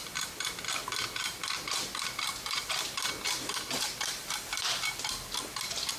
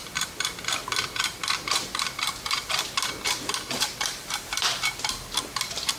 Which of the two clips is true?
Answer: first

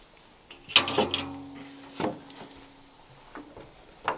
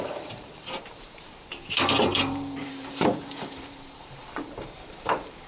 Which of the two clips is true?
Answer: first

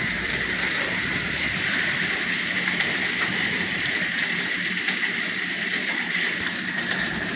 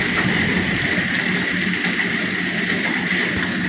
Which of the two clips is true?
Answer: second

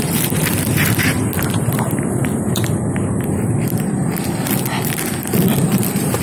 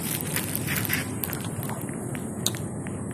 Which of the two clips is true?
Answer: second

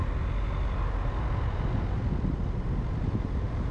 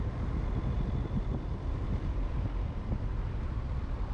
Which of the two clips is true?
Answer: first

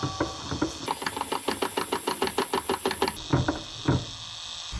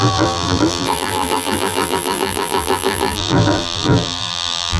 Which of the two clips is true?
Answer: first